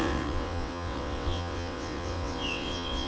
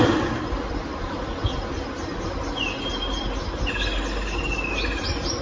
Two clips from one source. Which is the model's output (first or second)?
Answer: first